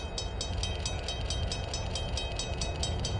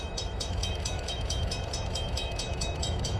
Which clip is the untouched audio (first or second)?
first